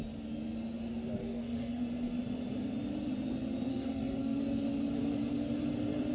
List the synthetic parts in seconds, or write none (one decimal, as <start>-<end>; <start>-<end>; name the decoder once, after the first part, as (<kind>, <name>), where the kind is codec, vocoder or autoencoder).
1.2-1.8 (codec, SNAC); 3.7-4.4

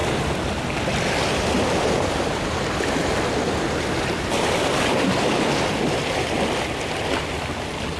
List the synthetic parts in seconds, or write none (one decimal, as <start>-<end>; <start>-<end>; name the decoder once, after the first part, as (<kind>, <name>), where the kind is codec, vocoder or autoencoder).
none